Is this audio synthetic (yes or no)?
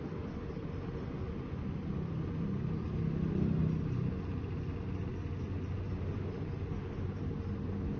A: no